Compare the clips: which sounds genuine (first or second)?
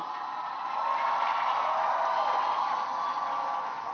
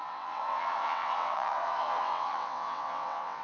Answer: first